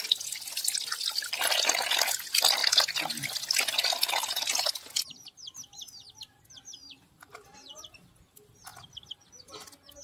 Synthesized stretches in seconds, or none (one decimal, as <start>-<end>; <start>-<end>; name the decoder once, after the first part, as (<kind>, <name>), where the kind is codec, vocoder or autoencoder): none